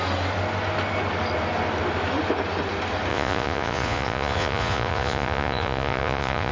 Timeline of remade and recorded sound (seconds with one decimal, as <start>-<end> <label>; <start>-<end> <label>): 0.0-3.1 recorded; 3.1-6.5 remade